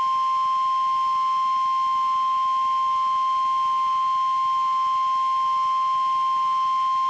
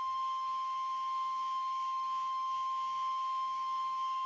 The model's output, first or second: second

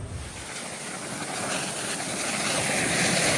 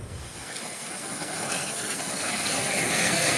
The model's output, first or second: second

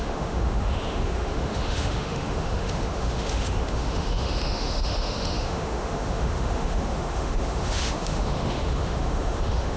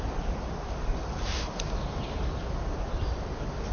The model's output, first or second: first